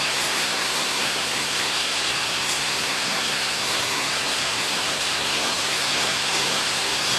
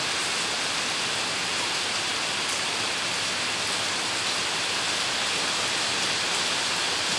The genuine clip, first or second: second